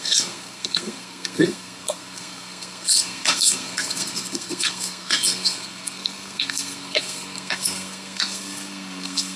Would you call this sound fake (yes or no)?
yes